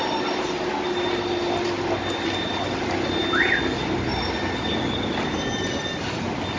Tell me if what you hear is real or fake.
real